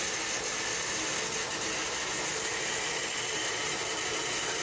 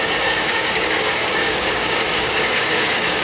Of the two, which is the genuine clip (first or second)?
first